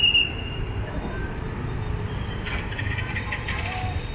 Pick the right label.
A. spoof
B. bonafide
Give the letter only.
B